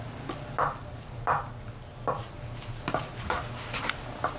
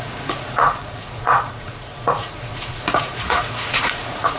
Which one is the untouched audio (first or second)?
first